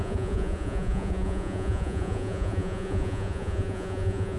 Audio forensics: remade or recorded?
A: remade